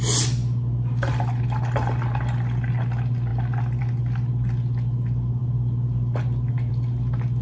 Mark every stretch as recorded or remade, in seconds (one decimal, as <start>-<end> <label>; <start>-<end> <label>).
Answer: 0.0-7.4 recorded